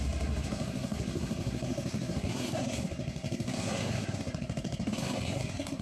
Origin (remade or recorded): remade